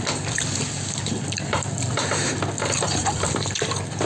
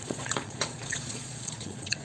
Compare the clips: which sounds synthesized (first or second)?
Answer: second